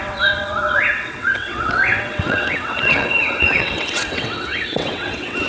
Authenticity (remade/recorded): remade